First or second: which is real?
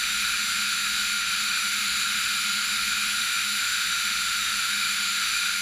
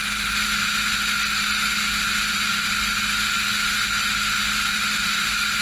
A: second